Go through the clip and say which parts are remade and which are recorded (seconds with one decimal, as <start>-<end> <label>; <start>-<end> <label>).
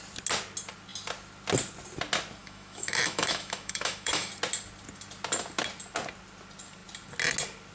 0.0-2.4 recorded; 2.4-4.3 remade; 4.3-7.7 recorded